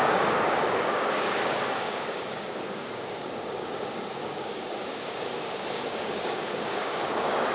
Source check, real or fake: fake